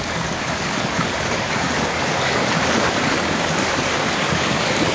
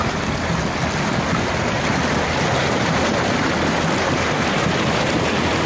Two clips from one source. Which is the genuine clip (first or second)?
second